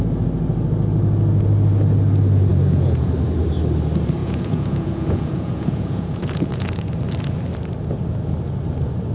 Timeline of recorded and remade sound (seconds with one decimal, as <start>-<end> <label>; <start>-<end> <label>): 0.0-2.5 recorded; 2.5-3.1 remade; 3.1-4.2 recorded; 4.2-6.9 remade; 6.9-9.1 recorded